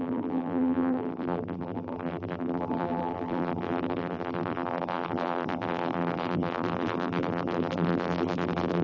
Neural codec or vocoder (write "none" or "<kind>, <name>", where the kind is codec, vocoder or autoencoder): vocoder, BigVGAN v2